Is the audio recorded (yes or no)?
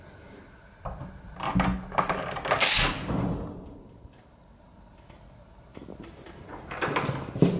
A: yes